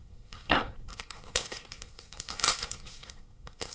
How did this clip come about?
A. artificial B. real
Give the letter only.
A